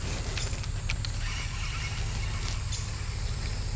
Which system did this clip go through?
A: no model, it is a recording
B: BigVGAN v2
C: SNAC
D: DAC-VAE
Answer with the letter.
A